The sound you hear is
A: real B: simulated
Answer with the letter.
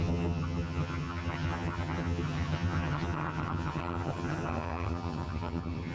B